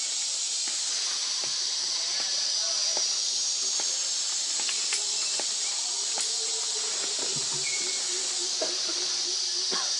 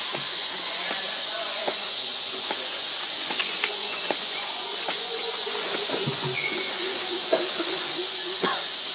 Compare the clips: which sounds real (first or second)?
first